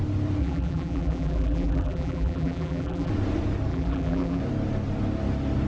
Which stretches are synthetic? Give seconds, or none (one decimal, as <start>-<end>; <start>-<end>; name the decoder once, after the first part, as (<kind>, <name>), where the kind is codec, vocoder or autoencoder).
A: 0.4-3.1 (vocoder, BigVGAN v2); 3.7-4.4